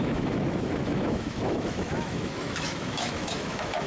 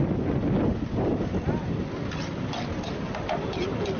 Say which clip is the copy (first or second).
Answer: first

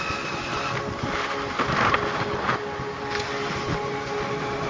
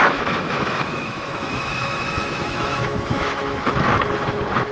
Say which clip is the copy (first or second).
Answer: second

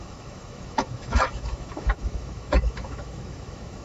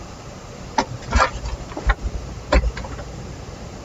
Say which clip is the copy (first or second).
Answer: first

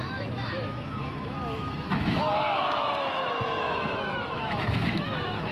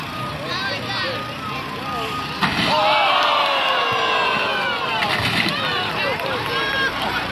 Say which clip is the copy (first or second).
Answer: first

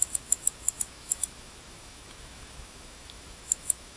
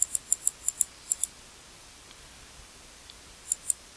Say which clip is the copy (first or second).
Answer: first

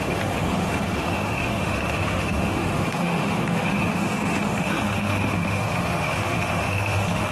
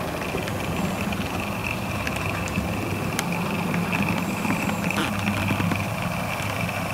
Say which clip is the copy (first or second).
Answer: first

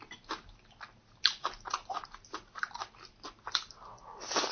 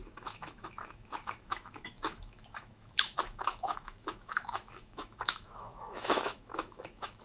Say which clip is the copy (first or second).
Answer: second